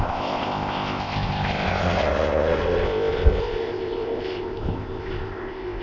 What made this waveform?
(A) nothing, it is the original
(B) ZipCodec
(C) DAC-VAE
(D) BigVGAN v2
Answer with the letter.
B